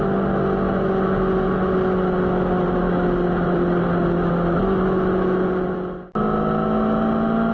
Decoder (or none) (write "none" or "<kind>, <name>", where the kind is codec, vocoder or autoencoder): none